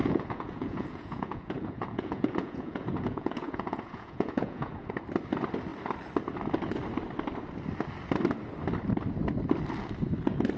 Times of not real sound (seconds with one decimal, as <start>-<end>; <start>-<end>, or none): 0.0-4.9